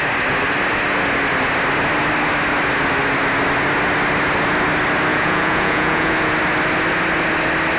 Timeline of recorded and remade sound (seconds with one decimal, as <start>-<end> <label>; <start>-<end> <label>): 0.0-5.1 recorded; 5.1-6.1 remade; 6.1-7.8 recorded